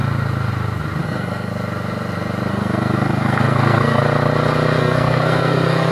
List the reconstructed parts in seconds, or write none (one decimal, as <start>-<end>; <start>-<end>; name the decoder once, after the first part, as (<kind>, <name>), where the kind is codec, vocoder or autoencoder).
1.0-1.5 (codec, SNAC); 2.5-4.0; 4.8-5.9